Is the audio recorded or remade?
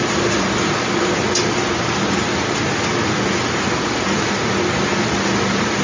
recorded